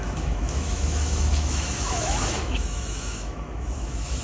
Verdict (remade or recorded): remade